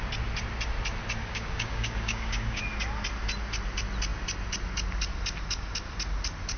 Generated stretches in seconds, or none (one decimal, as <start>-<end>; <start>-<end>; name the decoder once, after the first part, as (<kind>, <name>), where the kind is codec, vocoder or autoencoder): 1.2-2.6 (codec, DAC)